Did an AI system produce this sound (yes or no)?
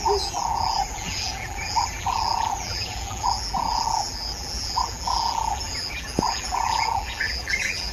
yes